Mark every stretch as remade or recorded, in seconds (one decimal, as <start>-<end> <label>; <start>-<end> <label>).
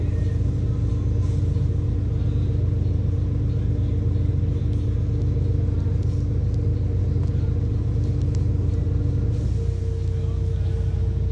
0.0-11.3 recorded